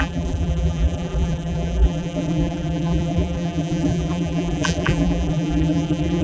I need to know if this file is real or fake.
fake